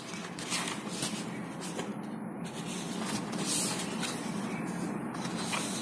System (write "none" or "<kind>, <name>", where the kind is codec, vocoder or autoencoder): none